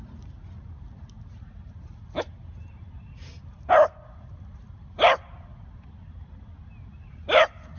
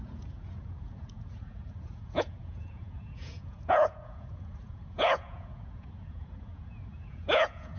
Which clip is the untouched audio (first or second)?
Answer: first